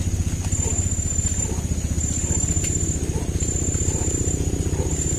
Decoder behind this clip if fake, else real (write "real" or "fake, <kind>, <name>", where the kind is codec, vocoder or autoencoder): real